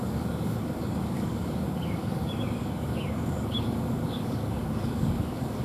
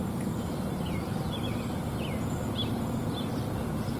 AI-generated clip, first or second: first